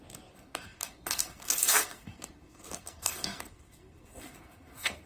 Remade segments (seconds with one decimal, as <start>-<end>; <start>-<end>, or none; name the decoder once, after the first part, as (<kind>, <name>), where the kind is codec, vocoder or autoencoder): 0.0-5.1 (codec, SNAC)